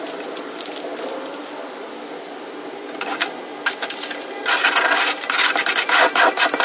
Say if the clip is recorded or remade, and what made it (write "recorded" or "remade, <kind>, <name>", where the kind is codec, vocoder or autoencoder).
recorded